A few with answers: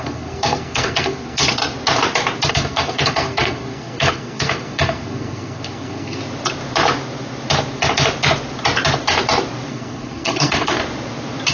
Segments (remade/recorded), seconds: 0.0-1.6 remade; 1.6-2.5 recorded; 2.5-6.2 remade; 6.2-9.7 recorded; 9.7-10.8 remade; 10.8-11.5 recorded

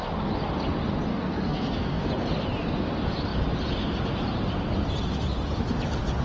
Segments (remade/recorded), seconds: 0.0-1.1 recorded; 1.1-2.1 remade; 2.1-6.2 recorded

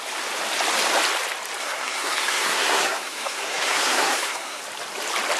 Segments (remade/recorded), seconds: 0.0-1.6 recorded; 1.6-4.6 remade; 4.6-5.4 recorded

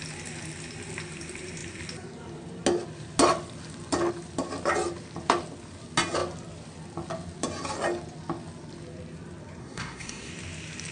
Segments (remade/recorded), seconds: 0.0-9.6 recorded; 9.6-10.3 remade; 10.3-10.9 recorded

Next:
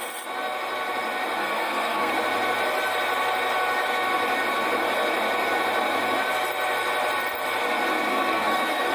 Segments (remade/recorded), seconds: 0.0-1.4 recorded; 1.4-2.1 remade; 2.1-8.1 recorded; 8.1-8.9 remade

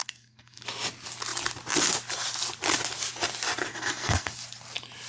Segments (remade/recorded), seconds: 0.0-0.6 remade; 0.6-3.7 recorded; 3.7-4.3 remade; 4.3-5.1 recorded

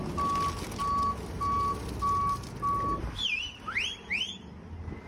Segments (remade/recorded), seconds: 0.0-5.1 recorded

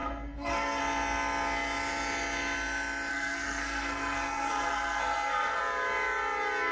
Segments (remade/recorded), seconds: 0.0-0.8 remade; 0.8-3.1 recorded; 3.1-5.6 remade; 5.6-6.7 recorded